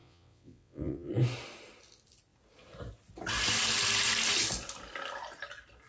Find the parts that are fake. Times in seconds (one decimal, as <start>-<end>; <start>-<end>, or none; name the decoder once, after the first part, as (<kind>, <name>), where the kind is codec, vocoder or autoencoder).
0.0-1.1 (vocoder, WaveNeXt)